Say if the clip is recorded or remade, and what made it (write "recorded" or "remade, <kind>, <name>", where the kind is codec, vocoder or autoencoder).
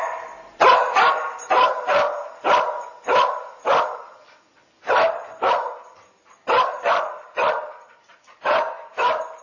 remade, vocoder, BigVGAN v2